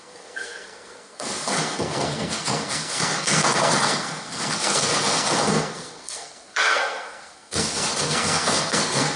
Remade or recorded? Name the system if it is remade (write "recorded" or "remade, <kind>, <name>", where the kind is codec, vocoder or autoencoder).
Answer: remade, codec, SNAC